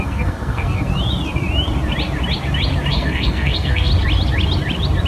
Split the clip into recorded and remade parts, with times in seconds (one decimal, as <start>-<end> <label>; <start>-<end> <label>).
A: 0.0-0.9 remade; 0.9-2.9 recorded; 2.9-3.9 remade; 3.9-5.1 recorded